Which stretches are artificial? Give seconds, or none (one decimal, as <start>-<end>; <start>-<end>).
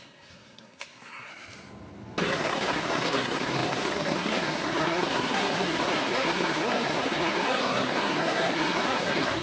0.0-1.3; 2.2-9.4